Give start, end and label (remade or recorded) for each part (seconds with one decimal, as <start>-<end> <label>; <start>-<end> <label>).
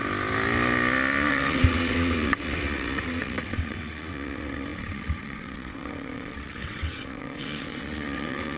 0.0-1.3 recorded; 1.3-8.6 remade